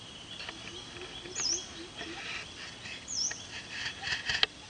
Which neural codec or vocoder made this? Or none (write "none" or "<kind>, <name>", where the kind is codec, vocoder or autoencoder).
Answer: none